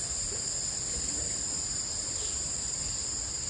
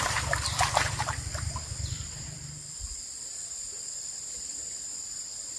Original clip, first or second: first